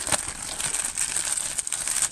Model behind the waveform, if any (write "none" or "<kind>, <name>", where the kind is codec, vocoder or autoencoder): none